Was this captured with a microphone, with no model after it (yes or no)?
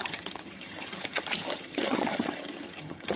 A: no